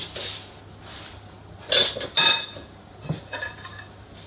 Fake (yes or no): no